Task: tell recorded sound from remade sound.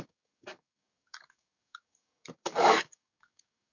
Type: remade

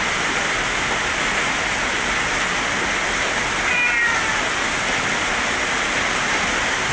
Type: recorded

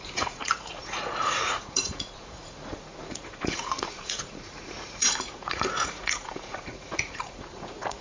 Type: remade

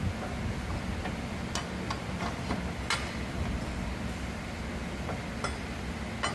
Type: recorded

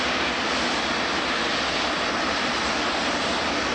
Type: recorded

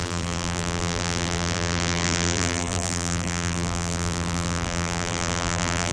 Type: remade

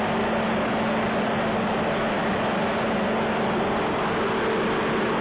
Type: recorded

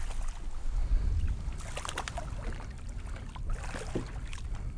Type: recorded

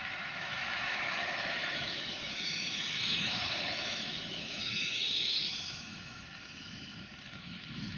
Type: remade